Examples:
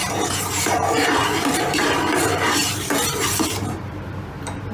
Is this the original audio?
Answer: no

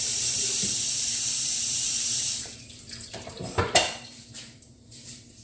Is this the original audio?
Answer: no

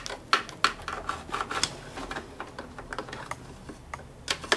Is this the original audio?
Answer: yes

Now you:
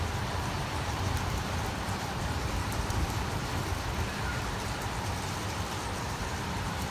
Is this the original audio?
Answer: no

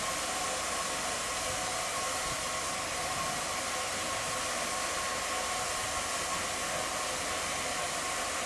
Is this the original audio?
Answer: yes